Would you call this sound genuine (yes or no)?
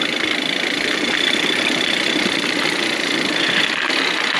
no